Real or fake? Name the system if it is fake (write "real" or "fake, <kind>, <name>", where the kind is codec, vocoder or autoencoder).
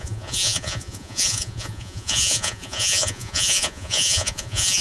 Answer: fake, vocoder, Vocos